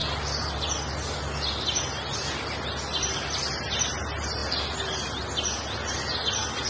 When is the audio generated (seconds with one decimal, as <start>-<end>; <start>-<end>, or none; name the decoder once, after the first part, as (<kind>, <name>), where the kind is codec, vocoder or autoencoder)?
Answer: none